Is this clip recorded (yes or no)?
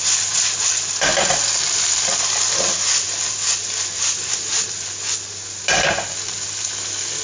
yes